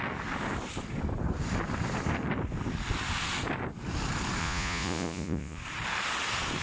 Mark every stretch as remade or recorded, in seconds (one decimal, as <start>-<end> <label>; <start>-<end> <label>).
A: 0.0-4.4 recorded; 4.4-5.6 remade; 5.6-6.6 recorded